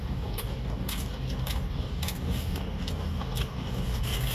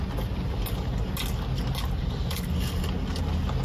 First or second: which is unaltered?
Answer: second